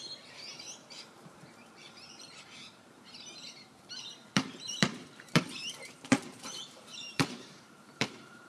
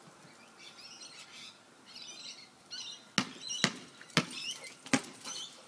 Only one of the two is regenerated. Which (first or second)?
first